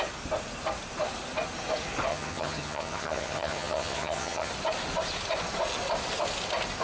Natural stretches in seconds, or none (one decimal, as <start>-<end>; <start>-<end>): 0.0-2.1; 4.5-6.8